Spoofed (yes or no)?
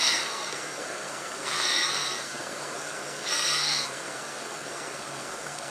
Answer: yes